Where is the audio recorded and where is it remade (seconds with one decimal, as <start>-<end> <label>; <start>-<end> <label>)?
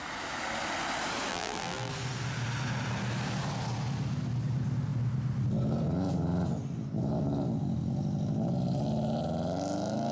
0.0-1.3 recorded; 1.3-1.9 remade; 1.9-10.1 recorded